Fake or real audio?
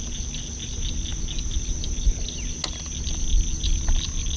real